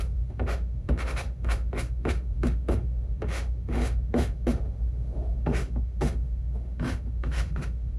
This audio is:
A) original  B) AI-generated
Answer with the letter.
B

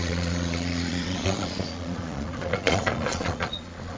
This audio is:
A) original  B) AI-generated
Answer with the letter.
B